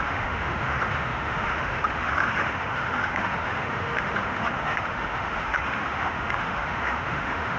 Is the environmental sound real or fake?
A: fake